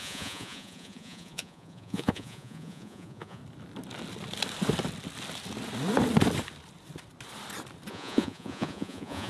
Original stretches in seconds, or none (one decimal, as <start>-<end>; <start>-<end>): 3.4-7.9